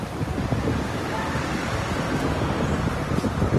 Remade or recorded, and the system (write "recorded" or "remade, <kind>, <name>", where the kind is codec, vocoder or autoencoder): recorded